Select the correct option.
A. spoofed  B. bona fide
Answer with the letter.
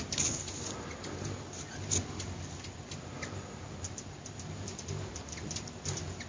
B